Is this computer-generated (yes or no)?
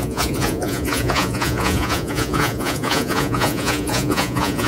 yes